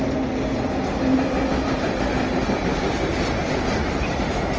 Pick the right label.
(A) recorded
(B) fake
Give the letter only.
A